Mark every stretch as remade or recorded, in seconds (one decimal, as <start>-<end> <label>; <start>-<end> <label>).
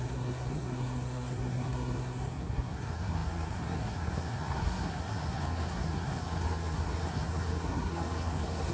0.0-8.7 remade